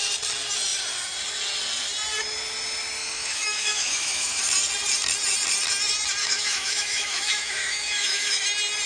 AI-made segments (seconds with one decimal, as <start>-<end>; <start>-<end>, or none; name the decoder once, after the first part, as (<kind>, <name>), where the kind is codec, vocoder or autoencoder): 3.0-4.4 (autoencoder, DAC-VAE); 6.2-8.4